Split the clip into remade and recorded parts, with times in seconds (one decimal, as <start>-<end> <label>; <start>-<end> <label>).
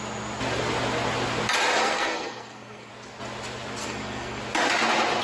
0.0-1.8 recorded; 1.8-2.9 remade; 2.9-3.8 recorded; 3.8-4.4 remade; 4.4-5.2 recorded